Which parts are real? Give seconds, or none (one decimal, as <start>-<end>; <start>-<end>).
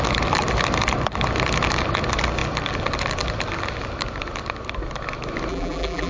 0.0-5.5